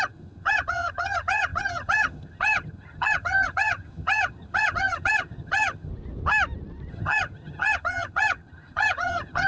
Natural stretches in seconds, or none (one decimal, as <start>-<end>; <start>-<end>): 5.9-6.9